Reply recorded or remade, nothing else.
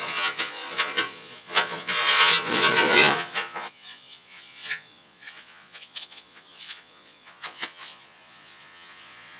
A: remade